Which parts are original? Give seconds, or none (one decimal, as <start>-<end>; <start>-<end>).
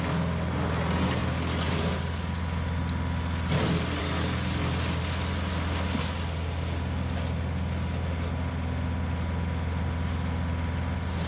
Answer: 0.0-11.3